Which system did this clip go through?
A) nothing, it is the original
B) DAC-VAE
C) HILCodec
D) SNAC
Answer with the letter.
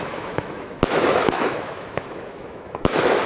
B